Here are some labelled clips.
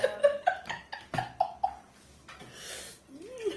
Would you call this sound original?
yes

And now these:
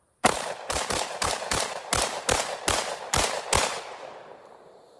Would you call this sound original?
no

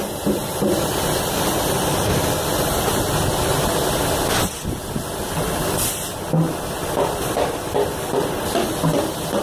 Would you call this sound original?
yes